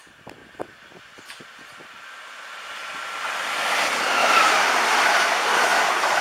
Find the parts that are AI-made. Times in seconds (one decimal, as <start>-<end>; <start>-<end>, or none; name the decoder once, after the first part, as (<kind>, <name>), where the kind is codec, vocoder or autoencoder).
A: 4.2-4.7 (vocoder, BigVGAN v2)